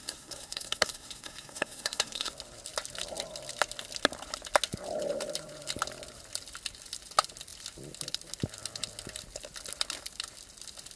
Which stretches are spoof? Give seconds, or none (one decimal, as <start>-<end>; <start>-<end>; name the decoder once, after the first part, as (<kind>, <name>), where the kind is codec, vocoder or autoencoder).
0.0-2.3 (codec, SNAC)